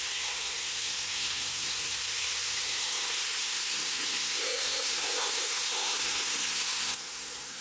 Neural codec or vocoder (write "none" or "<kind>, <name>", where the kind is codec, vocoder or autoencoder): codec, SNAC